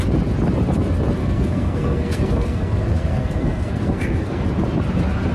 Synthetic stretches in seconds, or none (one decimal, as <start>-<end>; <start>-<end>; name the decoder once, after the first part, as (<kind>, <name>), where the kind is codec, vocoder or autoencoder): 1.2-4.4 (codec, SNAC)